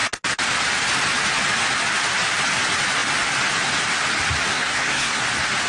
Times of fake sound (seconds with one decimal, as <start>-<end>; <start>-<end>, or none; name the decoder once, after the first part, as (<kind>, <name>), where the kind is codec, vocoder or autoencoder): 4.5-5.2 (codec, SNAC)